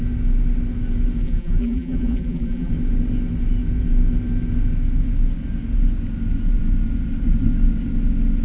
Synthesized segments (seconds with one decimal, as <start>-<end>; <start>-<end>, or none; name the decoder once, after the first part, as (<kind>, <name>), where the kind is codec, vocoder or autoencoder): 1.2-2.7 (vocoder, BigVGAN v2)